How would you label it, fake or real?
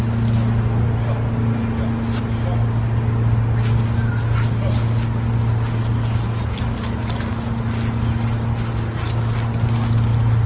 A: real